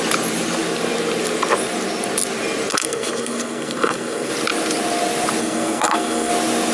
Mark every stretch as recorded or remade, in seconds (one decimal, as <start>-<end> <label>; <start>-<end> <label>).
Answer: 0.0-2.7 recorded; 2.7-4.3 remade; 4.3-5.4 recorded; 5.4-6.3 remade; 6.3-6.7 recorded